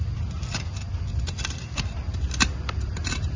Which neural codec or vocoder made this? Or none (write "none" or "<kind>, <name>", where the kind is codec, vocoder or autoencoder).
none